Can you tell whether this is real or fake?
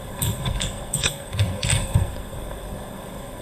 fake